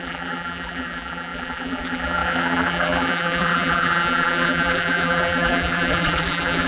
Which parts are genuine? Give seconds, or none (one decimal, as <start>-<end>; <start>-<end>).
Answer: none